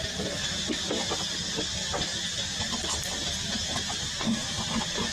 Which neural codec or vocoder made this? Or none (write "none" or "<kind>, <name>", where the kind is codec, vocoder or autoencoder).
none